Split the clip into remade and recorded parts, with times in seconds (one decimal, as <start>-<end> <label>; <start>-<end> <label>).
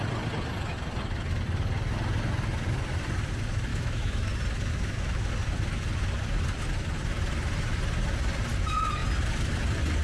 0.0-3.7 recorded; 3.7-4.3 remade; 4.3-4.7 recorded; 4.7-5.3 remade; 5.3-10.0 recorded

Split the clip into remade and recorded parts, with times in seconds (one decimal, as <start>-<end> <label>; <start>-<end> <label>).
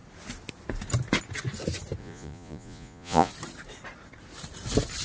0.0-2.0 recorded; 2.0-3.3 remade; 3.3-5.0 recorded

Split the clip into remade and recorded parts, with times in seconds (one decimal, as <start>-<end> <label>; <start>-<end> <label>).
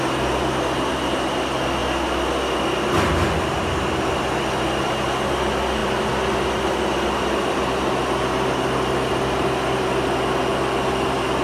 0.0-11.4 recorded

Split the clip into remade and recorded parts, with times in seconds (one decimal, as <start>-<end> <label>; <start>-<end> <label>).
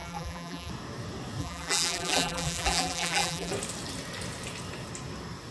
0.0-0.7 remade; 0.7-1.4 recorded; 1.4-3.5 remade; 3.5-5.5 recorded